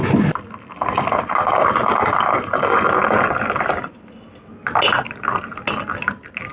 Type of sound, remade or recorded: recorded